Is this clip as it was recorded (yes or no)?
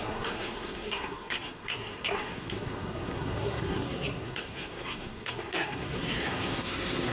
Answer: no